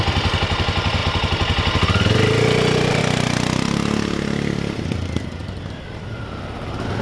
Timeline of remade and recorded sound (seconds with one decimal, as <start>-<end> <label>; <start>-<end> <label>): 0.0-5.4 recorded; 5.4-6.2 remade; 6.2-7.0 recorded